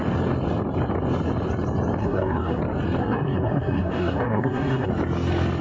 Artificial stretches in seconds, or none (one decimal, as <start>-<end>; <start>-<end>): 2.0-2.6; 3.0-4.9